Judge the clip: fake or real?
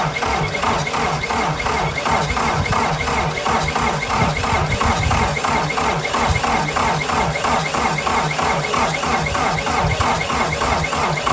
real